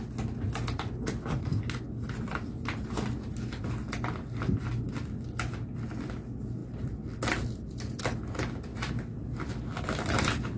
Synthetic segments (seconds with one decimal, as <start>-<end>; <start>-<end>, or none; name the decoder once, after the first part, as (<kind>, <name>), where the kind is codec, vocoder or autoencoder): 6.6-8.0 (vocoder, BigVGAN v2); 8.7-10.6